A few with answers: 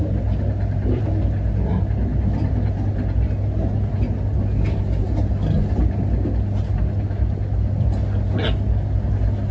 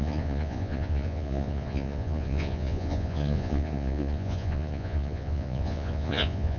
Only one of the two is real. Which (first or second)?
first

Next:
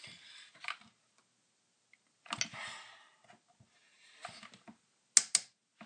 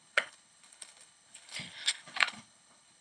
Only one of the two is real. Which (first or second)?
first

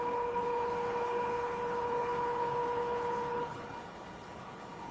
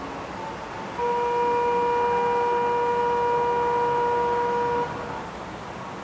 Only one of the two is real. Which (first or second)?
second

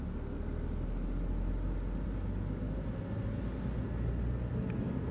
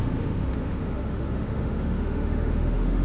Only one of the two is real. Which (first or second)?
first